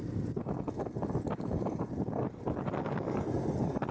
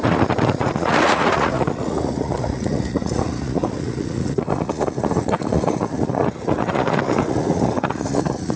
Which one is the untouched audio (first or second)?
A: first